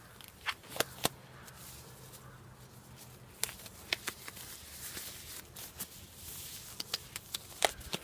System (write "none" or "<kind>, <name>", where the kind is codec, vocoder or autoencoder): none